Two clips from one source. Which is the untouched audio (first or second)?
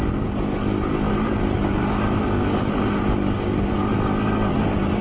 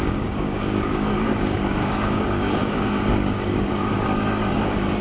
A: first